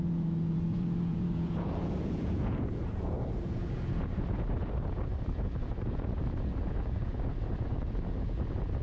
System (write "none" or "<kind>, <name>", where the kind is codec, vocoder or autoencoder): vocoder, Vocos